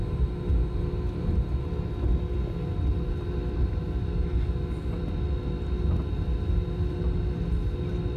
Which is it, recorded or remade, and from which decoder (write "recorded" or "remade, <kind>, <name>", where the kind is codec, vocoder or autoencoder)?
recorded